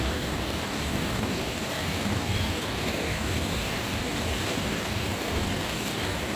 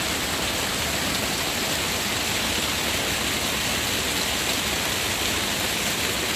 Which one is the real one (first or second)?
second